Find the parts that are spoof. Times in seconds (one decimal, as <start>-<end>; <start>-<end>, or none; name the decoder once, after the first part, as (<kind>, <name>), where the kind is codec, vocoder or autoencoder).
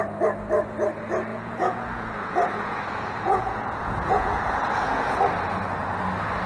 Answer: 1.3-5.2 (vocoder, Vocos)